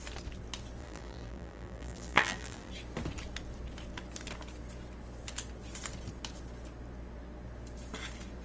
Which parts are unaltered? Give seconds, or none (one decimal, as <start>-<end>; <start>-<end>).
0.0-0.8; 2.7-8.4